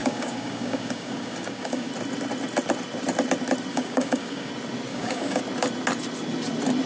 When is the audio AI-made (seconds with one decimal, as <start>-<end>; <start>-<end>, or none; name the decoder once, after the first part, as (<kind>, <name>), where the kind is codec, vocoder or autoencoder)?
0.0-1.9 (codec, DAC); 3.7-4.5; 4.9-5.4